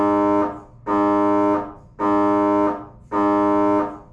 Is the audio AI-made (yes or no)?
no